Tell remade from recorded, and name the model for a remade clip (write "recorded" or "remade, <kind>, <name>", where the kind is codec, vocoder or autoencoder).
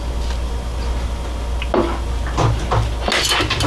recorded